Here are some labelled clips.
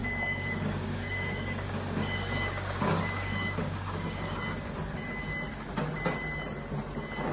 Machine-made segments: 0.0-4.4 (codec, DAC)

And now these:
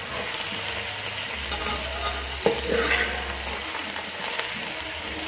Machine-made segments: none

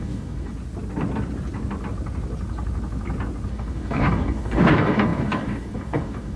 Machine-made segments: 0.0-0.5 (codec, DAC); 3.5-6.4

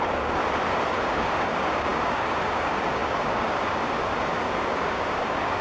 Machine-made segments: 0.0-0.4 (codec, DAC); 1.0-5.6

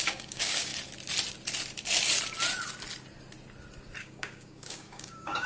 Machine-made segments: 0.0-0.7 (codec, DAC); 4.0-5.5

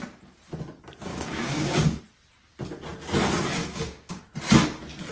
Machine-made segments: 1.1-2.0 (codec, DAC); 3.6-4.2

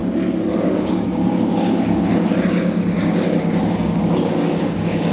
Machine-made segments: 0.6-5.1 (codec, DAC)